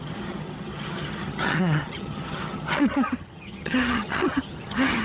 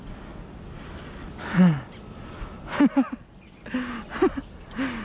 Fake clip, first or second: first